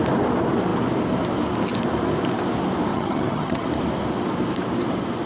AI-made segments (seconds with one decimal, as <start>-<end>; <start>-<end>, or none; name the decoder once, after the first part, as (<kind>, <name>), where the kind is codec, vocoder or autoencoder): 2.9-3.7 (vocoder, HiFi-GAN)